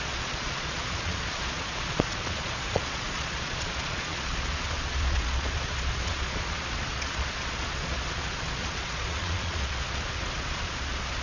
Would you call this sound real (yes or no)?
no